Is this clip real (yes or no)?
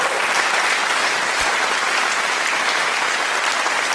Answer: yes